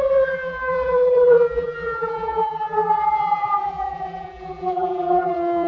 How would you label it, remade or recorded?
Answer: remade